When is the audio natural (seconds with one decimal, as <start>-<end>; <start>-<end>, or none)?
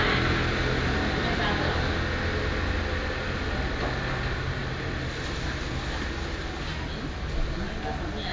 0.0-8.3